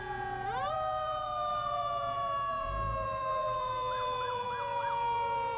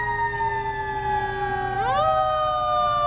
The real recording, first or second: second